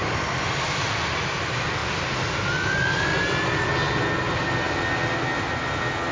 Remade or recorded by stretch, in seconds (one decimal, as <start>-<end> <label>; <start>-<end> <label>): 0.0-6.1 recorded